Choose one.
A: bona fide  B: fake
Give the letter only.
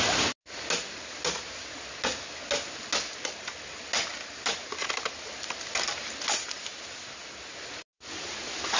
A